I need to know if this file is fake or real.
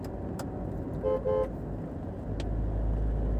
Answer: real